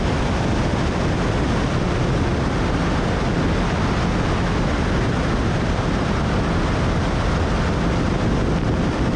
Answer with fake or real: real